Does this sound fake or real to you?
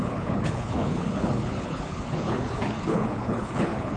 fake